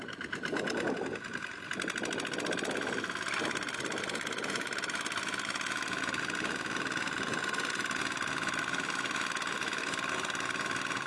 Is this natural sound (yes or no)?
yes